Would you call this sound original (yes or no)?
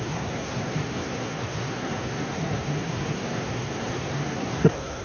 no